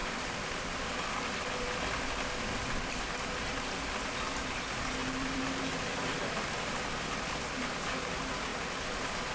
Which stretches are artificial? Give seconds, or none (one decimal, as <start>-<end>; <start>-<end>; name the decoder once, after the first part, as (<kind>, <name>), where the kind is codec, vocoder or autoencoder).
0.0-1.8 (vocoder, BigVGAN v2); 5.0-6.9